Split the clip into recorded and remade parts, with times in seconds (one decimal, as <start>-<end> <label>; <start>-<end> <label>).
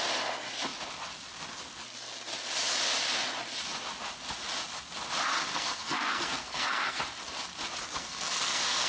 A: 0.0-5.5 recorded; 5.5-7.0 remade; 7.0-8.0 recorded; 8.0-8.9 remade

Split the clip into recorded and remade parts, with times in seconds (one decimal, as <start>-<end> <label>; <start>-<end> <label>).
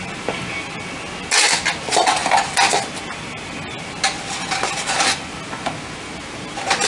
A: 0.0-6.9 recorded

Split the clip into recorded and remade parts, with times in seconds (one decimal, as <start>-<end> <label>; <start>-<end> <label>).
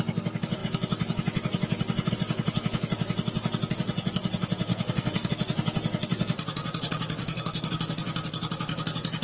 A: 0.0-4.7 recorded; 4.7-5.3 remade; 5.3-7.2 recorded; 7.2-7.7 remade; 7.7-9.2 recorded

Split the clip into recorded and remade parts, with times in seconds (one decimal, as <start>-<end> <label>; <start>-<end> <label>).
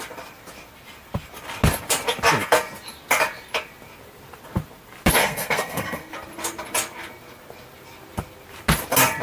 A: 0.0-5.2 recorded; 5.2-6.1 remade; 6.1-9.2 recorded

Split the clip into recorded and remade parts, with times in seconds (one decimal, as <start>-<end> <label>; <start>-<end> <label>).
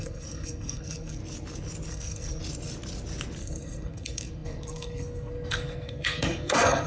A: 0.0-1.2 remade; 1.2-1.9 recorded; 1.9-2.4 remade; 2.4-3.4 recorded; 3.4-6.9 remade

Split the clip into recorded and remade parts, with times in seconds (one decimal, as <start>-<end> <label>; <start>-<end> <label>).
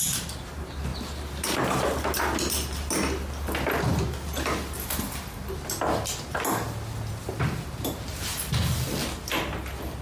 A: 0.0-10.0 recorded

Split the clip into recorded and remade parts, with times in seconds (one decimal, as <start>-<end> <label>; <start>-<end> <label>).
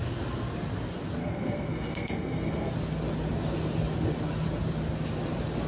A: 0.0-1.2 recorded; 1.2-2.7 remade; 2.7-5.7 recorded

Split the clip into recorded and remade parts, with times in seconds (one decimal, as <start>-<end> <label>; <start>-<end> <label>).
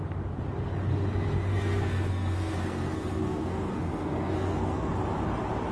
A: 0.0-1.5 recorded; 1.5-4.9 remade; 4.9-5.7 recorded